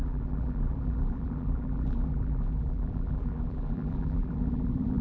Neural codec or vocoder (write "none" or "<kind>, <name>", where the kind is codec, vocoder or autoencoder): vocoder, BigVGAN v2